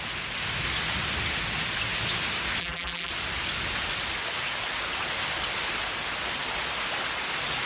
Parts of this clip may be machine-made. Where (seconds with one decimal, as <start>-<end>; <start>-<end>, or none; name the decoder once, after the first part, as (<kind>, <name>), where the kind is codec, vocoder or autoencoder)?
2.6-3.1 (vocoder, BigVGAN v2)